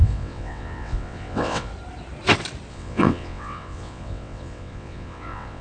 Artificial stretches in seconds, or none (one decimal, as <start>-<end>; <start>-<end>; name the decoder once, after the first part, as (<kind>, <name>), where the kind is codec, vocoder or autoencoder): 0.0-1.7 (vocoder, WaveNeXt); 2.7-5.6